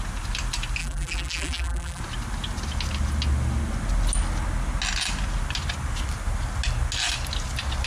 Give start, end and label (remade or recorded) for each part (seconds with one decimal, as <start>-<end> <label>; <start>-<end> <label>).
0.0-0.8 recorded; 0.8-2.0 remade; 2.0-7.9 recorded